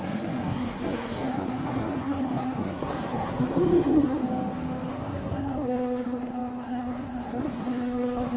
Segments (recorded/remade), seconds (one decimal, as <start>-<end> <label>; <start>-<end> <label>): 0.0-4.2 remade; 4.2-4.9 recorded; 4.9-8.4 remade